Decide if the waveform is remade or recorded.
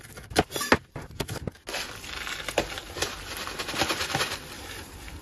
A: recorded